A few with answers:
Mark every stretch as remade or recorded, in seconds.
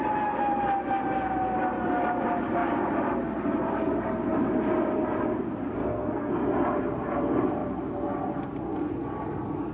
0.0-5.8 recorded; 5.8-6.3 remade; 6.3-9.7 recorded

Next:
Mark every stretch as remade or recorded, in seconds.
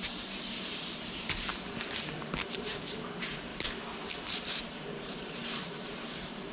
0.0-1.5 remade; 1.5-2.2 recorded; 2.2-3.5 remade; 3.5-4.6 recorded; 4.6-6.5 remade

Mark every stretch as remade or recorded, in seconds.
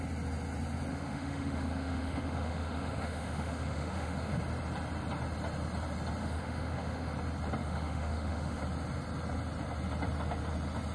0.0-0.9 recorded; 0.9-4.4 remade; 4.4-6.2 recorded; 6.2-7.1 remade; 7.1-7.6 recorded; 7.6-8.6 remade; 8.6-10.9 recorded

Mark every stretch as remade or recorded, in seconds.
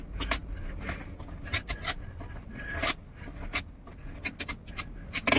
0.0-5.4 recorded